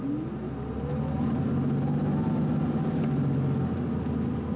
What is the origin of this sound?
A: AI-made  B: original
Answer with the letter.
B